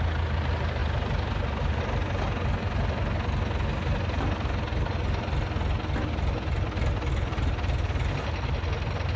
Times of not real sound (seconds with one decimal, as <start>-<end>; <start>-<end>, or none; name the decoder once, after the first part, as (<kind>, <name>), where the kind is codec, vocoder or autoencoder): none